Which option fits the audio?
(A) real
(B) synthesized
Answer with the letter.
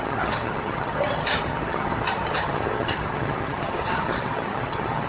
B